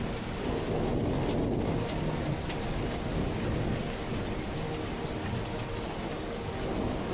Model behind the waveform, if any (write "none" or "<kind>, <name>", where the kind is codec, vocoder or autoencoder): none